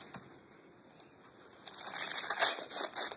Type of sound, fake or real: real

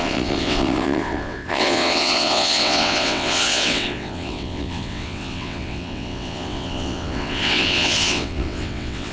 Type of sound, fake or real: fake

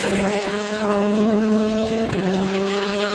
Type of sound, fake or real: fake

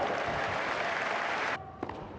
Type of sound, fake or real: real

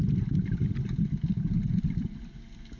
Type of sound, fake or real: real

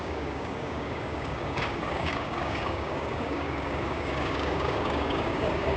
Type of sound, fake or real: fake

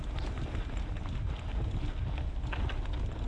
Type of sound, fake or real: real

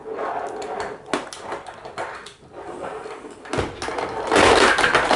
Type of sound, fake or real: real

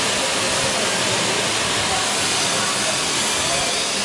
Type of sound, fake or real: real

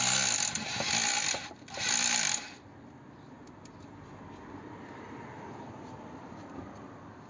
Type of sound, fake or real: real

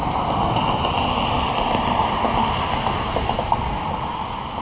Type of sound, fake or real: real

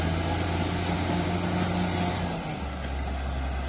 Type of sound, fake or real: real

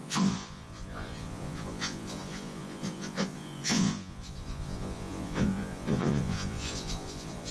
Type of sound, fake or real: fake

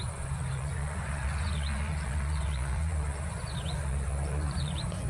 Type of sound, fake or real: fake